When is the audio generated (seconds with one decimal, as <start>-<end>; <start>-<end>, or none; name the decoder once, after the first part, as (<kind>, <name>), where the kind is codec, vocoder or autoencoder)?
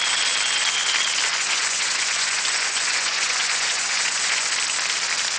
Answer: 1.3-4.5 (vocoder, Vocos)